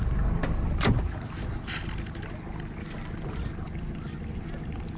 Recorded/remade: recorded